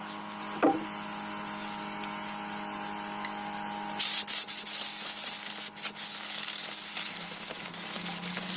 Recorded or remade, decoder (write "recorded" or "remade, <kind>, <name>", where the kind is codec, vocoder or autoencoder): recorded